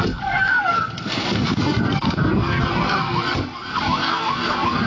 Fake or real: fake